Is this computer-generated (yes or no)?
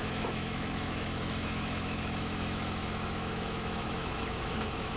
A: yes